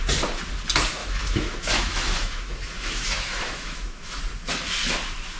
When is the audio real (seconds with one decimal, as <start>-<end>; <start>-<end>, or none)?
0.0-1.0; 4.2-5.4